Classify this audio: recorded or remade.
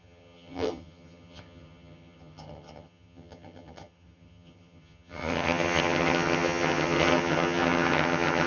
remade